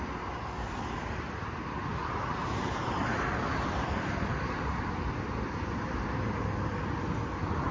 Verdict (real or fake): real